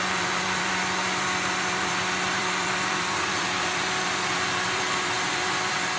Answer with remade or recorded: remade